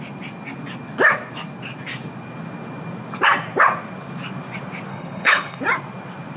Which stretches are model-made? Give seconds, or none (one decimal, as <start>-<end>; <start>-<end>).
4.9-5.6